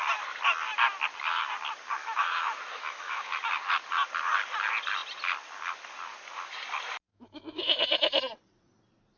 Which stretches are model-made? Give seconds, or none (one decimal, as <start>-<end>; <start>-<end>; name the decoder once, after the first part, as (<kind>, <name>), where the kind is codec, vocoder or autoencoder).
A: 2.0-3.4 (autoencoder, DAC-VAE); 7.1-8.2